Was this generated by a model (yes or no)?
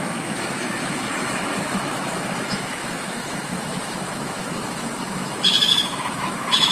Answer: yes